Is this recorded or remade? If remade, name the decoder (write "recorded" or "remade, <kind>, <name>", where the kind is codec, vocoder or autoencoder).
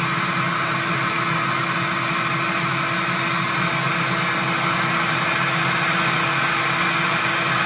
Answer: recorded